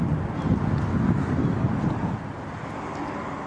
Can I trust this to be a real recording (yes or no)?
yes